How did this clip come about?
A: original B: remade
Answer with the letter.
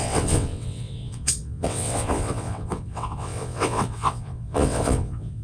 B